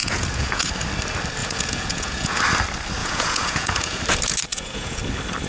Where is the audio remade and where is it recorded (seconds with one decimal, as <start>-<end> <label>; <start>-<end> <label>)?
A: 0.0-0.7 remade; 0.7-1.4 recorded; 1.4-2.4 remade; 2.4-3.0 recorded; 3.0-4.0 remade; 4.0-4.5 recorded; 4.5-5.0 remade; 5.0-5.5 recorded